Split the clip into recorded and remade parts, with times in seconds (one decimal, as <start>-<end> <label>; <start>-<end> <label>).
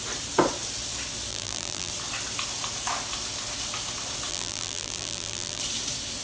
0.0-1.3 recorded; 1.3-1.9 remade; 1.9-4.3 recorded; 4.3-5.6 remade; 5.6-6.2 recorded